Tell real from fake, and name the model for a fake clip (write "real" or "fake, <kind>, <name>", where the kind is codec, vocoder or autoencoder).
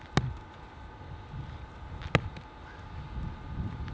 real